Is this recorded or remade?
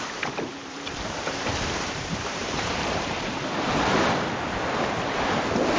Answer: remade